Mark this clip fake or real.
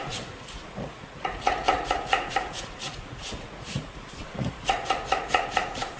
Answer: fake